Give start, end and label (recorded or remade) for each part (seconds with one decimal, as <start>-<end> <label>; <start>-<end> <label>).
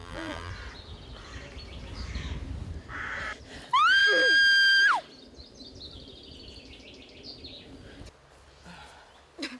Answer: 0.0-0.5 remade; 0.5-9.6 recorded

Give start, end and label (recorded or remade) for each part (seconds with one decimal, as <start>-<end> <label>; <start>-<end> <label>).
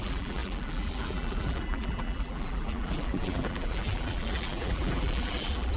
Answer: 0.0-5.8 remade